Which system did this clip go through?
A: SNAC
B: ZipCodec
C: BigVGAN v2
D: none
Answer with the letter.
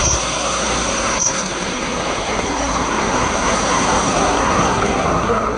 A